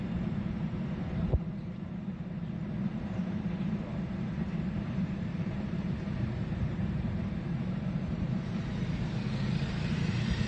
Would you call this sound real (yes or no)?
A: no